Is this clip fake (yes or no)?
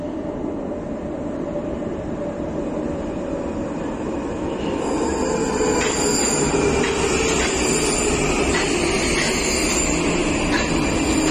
no